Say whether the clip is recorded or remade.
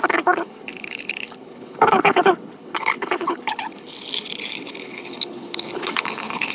remade